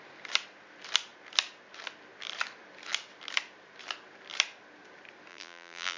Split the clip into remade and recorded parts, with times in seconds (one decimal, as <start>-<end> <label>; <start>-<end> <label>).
0.0-5.3 recorded; 5.3-6.0 remade